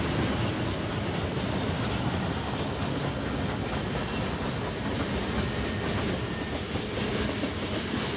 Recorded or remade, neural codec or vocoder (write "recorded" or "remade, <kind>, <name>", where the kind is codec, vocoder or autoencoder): recorded